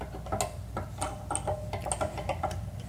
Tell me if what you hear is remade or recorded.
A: recorded